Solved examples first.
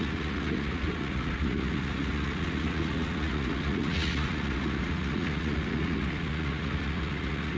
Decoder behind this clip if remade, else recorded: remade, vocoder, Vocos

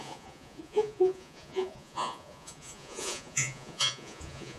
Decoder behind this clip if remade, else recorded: remade, vocoder, Vocos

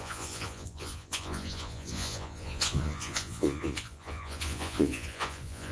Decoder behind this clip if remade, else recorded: remade, vocoder, Vocos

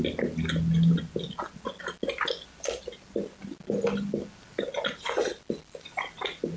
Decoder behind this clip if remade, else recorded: recorded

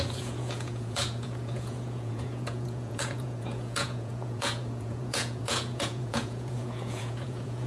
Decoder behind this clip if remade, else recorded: remade, vocoder, Vocos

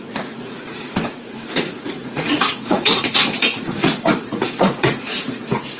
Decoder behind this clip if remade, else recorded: remade, vocoder, Vocos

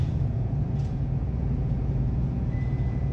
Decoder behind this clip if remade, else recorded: remade, vocoder, Vocos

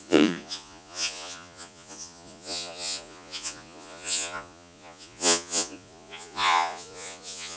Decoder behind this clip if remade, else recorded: remade, vocoder, Vocos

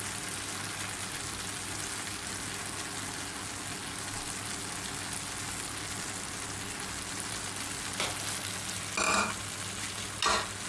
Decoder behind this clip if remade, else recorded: recorded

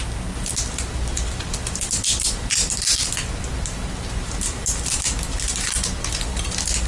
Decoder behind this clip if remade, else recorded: recorded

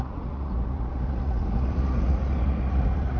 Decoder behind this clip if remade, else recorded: remade, vocoder, Vocos